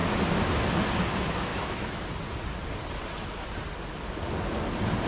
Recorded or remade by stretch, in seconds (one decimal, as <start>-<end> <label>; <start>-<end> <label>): 0.0-1.5 recorded; 1.5-2.1 remade; 2.1-5.1 recorded